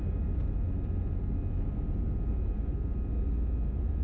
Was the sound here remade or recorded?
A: recorded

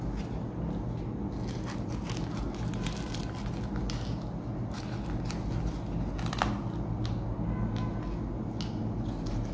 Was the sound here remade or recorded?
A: recorded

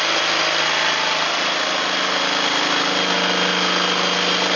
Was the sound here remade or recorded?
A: recorded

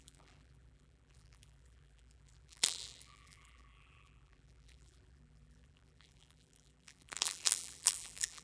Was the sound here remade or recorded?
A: remade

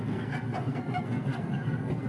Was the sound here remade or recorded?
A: remade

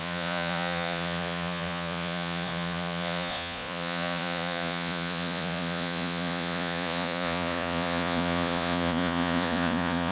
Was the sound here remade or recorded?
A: remade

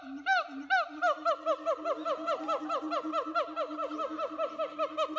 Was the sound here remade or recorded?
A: recorded